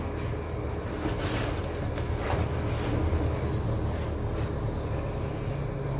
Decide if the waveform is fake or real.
real